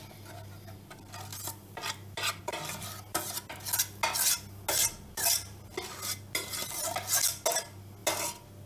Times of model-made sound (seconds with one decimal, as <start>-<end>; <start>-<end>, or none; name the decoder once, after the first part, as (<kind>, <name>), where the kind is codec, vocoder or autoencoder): none